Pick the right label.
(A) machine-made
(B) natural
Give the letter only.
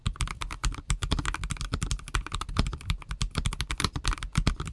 B